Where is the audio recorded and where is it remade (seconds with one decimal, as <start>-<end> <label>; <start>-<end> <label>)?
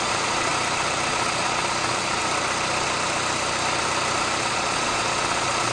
0.0-0.5 remade; 0.5-1.1 recorded; 1.1-2.2 remade; 2.2-4.4 recorded; 4.4-5.7 remade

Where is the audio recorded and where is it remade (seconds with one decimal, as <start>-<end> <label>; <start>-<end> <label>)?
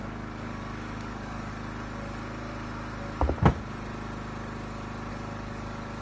0.0-1.5 remade; 1.5-5.1 recorded; 5.1-6.0 remade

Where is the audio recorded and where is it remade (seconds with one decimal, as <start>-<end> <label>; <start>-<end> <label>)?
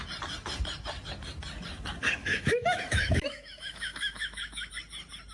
0.0-2.2 recorded; 2.2-4.7 remade; 4.7-5.3 recorded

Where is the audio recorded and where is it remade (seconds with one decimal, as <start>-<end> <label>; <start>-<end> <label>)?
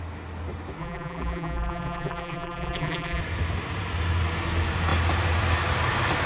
0.0-0.8 recorded; 0.8-3.2 remade; 3.2-6.3 recorded